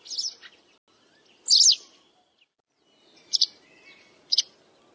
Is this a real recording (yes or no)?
yes